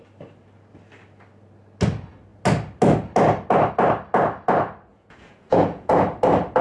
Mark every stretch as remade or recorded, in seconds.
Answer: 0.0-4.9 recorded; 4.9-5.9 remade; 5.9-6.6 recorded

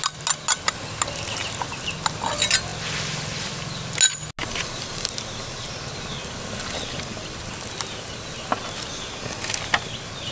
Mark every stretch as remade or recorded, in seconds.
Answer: 0.0-10.3 recorded

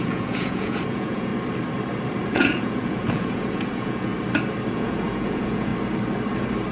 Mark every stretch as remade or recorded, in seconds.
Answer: 0.0-1.3 remade; 1.3-2.3 recorded; 2.3-4.1 remade; 4.1-4.7 recorded; 4.7-5.7 remade; 5.7-6.7 recorded

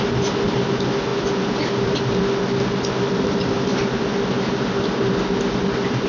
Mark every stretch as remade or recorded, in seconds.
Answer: 0.0-6.1 recorded